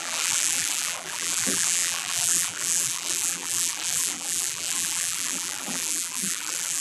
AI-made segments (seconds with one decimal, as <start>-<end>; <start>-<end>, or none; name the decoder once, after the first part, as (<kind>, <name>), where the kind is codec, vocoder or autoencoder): 0.0-6.8 (vocoder, BigVGAN v2)